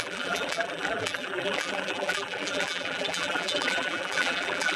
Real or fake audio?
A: fake